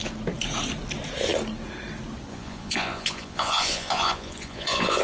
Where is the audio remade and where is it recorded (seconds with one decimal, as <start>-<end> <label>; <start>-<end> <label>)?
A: 0.0-2.3 recorded; 2.3-5.0 remade